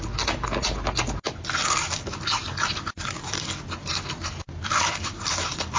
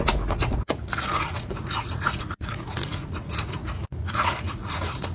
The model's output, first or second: second